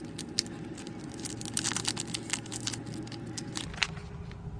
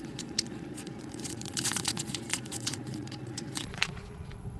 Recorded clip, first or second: first